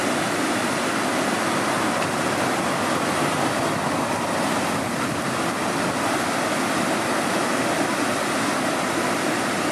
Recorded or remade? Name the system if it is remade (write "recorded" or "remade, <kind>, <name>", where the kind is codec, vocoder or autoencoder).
recorded